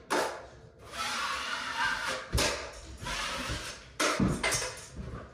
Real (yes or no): yes